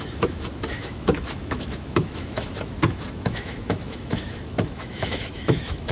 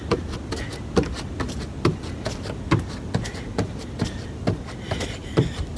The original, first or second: second